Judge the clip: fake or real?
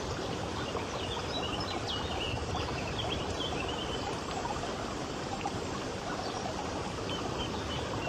fake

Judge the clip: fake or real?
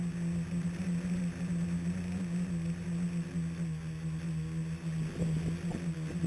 real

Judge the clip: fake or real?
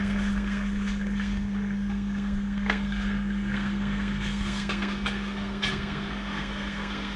fake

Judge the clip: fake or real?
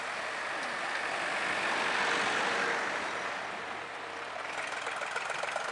real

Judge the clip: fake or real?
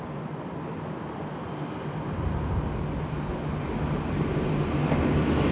real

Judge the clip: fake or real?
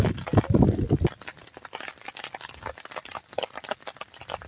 real